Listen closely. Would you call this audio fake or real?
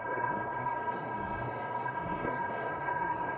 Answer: fake